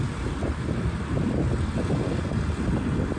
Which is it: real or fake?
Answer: real